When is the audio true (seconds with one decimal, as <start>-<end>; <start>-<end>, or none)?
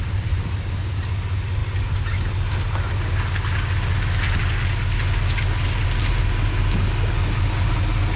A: 0.0-8.2